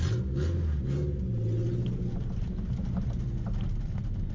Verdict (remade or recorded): recorded